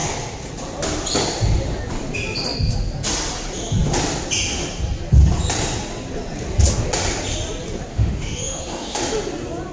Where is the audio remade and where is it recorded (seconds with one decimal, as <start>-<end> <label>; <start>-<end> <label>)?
0.0-7.9 recorded; 7.9-9.0 remade; 9.0-9.7 recorded